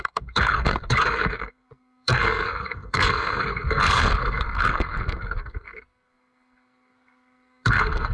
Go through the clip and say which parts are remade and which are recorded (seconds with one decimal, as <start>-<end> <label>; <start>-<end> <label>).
0.0-8.1 remade